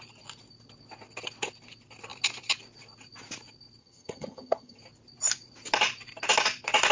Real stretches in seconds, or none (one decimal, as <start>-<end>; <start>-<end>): 0.0-3.8; 4.8-6.9